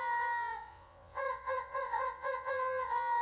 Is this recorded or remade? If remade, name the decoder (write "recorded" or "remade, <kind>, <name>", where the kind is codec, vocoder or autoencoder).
remade, vocoder, WaveNeXt